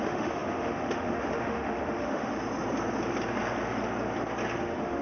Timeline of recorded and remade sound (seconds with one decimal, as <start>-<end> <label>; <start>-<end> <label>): 0.0-2.3 remade; 2.3-4.6 recorded; 4.6-5.0 remade